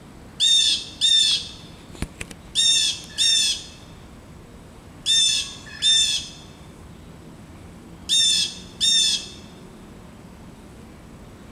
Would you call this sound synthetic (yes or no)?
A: no